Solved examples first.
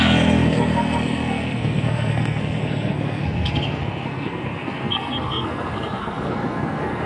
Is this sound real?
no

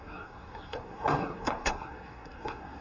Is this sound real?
no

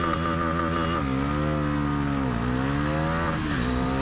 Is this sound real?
yes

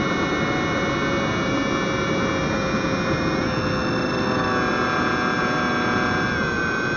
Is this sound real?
yes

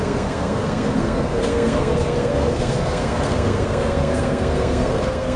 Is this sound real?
no